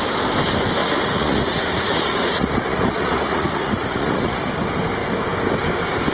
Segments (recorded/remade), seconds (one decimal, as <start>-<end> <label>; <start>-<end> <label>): 0.0-0.8 recorded; 0.8-4.5 remade; 4.5-6.1 recorded